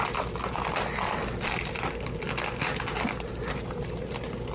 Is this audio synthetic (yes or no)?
no